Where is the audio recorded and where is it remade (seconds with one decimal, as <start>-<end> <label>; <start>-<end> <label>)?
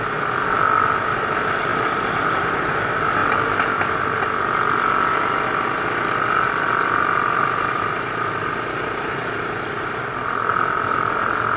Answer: 0.0-11.6 recorded